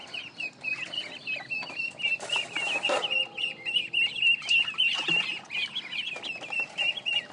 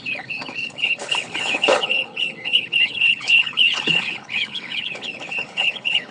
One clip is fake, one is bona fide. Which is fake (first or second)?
second